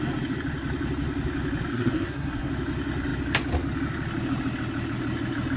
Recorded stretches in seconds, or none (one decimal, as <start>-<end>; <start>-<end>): 0.0-1.7; 2.5-5.6